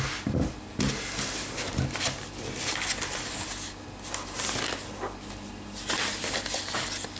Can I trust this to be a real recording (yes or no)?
yes